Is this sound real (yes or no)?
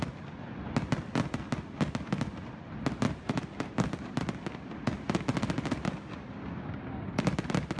yes